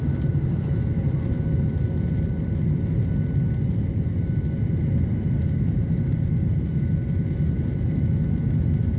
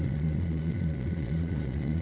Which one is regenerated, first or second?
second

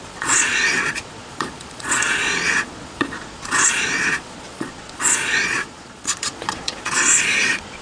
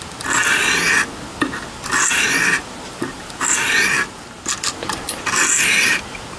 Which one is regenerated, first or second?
first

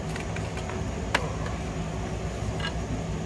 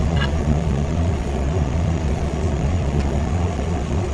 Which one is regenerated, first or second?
second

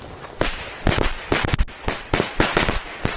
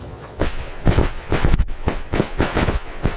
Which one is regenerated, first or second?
second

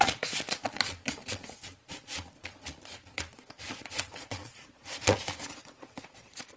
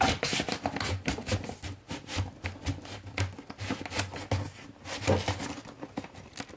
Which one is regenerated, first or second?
first